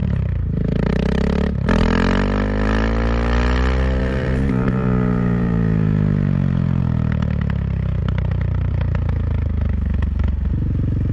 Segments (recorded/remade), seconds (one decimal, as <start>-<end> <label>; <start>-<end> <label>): 0.0-0.9 remade; 0.9-4.0 recorded; 4.0-6.8 remade; 6.8-8.0 recorded; 8.0-8.7 remade; 8.7-11.1 recorded